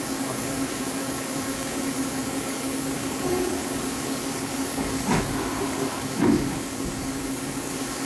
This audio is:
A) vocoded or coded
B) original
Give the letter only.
A